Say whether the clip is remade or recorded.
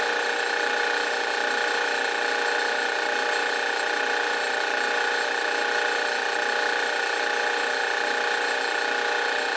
recorded